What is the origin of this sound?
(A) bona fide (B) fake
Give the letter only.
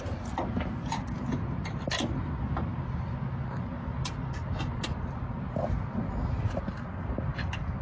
A